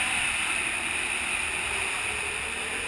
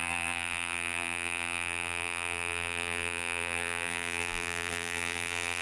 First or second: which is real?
first